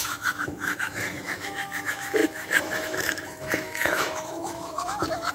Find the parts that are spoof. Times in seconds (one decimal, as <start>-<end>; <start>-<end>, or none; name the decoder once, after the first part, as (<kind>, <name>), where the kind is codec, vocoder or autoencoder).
0.0-5.3 (autoencoder, DAC-VAE)